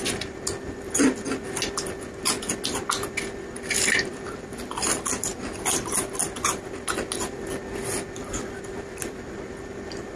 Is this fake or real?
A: real